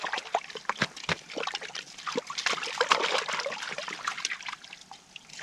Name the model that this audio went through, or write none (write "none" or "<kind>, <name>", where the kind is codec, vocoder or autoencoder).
none